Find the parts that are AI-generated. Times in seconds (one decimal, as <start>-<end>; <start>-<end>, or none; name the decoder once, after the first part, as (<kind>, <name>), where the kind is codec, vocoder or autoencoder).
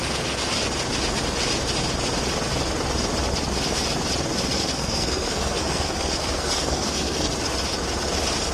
4.5-7.3 (codec, SNAC)